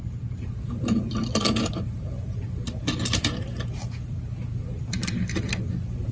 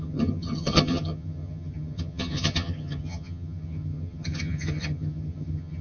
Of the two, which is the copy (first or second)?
second